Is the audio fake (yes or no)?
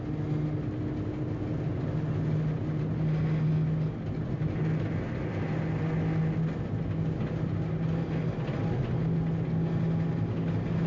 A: no